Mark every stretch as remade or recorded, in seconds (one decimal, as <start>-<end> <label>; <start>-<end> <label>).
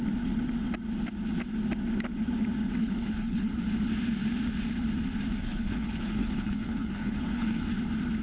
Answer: 0.0-2.8 recorded; 2.8-3.5 remade; 3.5-5.4 recorded; 5.4-7.6 remade; 7.6-8.2 recorded